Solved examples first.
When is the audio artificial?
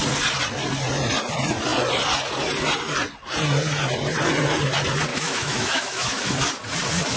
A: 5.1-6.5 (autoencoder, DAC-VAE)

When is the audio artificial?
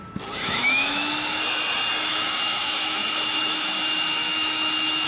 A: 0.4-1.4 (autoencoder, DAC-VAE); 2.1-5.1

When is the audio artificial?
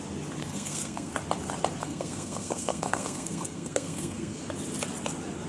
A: 0.4-1.1 (codec, SNAC); 1.8-4.4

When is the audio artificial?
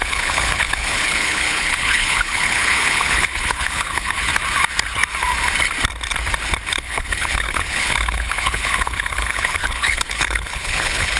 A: 0.0-4.3 (codec, HILCodec); 6.7-11.2